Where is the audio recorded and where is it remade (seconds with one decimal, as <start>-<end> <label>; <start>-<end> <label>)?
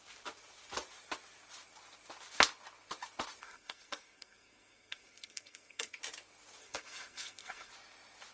0.0-3.4 recorded; 3.4-6.0 remade; 6.0-6.6 recorded; 6.6-7.7 remade; 7.7-8.3 recorded